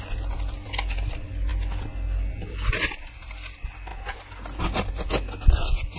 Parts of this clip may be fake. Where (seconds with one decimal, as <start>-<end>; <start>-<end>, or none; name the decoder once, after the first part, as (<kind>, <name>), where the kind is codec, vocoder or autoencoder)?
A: none